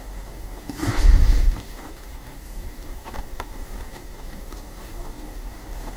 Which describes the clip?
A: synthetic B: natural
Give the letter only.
A